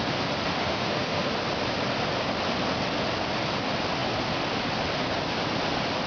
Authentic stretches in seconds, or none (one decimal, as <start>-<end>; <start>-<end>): 0.0-0.6; 1.3-6.1